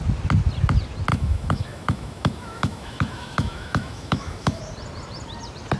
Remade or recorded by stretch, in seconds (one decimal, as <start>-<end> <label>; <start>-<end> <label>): 0.0-1.1 recorded; 1.1-4.6 remade; 4.6-5.8 recorded